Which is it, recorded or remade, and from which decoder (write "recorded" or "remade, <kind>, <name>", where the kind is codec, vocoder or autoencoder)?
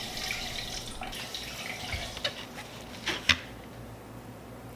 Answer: recorded